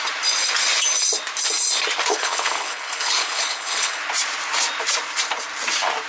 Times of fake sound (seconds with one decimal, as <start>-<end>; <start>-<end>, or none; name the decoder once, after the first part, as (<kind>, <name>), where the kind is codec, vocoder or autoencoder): 2.1-4.0 (codec, HILCodec)